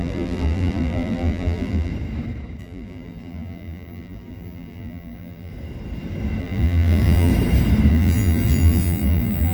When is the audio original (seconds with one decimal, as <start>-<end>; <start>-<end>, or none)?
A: 1.9-2.6; 5.5-6.4; 7.3-7.9